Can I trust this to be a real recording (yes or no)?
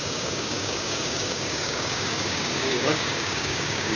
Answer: no